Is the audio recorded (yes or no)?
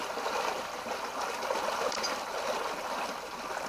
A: yes